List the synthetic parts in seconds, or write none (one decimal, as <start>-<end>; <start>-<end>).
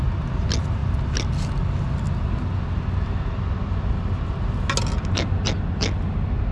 none